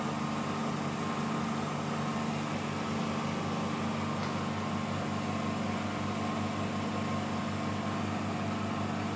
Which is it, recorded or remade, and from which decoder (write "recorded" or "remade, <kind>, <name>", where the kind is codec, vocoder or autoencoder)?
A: recorded